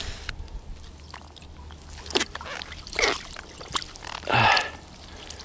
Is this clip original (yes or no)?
yes